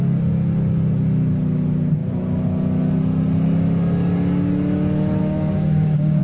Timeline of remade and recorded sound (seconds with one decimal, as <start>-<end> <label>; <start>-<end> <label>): 0.0-5.2 recorded; 5.2-6.2 remade